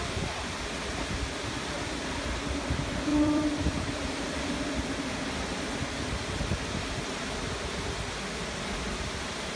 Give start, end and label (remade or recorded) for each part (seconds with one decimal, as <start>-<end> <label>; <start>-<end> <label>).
0.0-3.1 recorded; 3.1-5.6 remade; 5.6-9.6 recorded

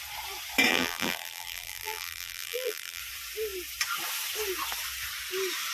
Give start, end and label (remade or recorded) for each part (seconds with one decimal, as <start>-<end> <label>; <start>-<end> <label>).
0.0-0.7 recorded; 0.7-3.0 remade; 3.0-5.7 recorded

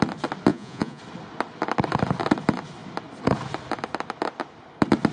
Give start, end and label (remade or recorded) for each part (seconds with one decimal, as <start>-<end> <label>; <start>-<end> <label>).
0.0-0.5 recorded; 0.5-1.0 remade; 1.0-5.1 recorded

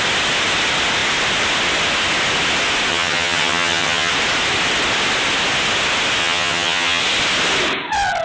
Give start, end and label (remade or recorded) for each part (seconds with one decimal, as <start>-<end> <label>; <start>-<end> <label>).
0.0-2.9 recorded; 2.9-4.1 remade; 4.1-6.2 recorded; 6.2-7.0 remade; 7.0-8.2 recorded

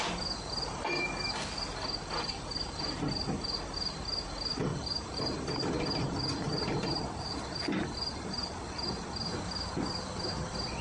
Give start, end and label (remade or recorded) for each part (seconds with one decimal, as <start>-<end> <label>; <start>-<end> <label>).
0.0-10.8 recorded

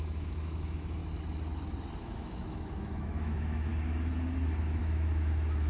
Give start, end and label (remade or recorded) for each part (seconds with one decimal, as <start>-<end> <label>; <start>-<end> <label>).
0.0-1.0 remade; 1.0-2.0 recorded; 2.0-3.7 remade; 3.7-4.8 recorded; 4.8-5.7 remade

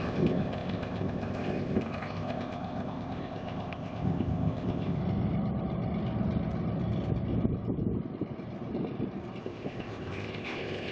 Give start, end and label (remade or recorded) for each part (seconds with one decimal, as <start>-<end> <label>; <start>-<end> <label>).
0.0-5.0 remade; 5.0-9.4 recorded; 9.4-10.9 remade

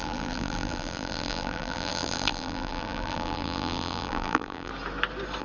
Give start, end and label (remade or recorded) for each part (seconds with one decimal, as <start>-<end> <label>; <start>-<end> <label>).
0.0-4.7 remade; 4.7-5.4 recorded